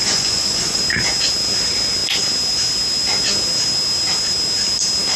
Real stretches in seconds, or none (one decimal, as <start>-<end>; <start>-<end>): 0.8-5.2